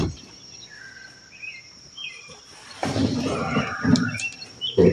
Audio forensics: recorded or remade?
remade